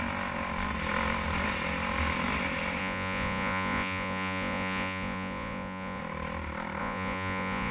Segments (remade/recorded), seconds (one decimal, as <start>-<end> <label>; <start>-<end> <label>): 0.0-2.8 recorded; 2.8-6.0 remade; 6.0-6.8 recorded; 6.8-7.7 remade